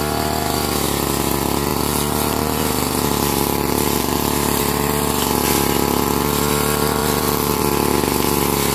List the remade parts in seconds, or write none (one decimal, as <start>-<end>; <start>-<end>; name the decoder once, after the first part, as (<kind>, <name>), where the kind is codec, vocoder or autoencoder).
1.7-4.6 (vocoder, BigVGAN v2); 7.0-7.6